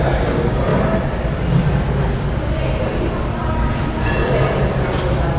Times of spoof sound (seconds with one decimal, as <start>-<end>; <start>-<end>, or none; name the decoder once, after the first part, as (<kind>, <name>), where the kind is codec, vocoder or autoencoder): none